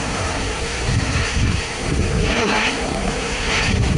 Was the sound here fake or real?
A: fake